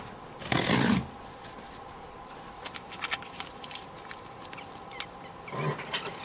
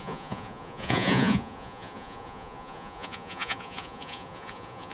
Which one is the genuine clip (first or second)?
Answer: first